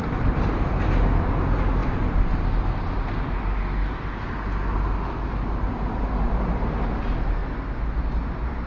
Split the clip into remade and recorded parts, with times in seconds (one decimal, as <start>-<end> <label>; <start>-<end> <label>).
0.0-8.7 recorded